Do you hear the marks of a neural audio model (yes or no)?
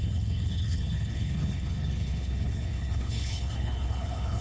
yes